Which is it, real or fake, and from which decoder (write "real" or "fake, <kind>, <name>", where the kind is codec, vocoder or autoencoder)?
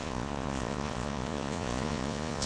fake, vocoder, Vocos